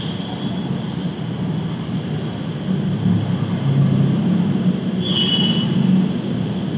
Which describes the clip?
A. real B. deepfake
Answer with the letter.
A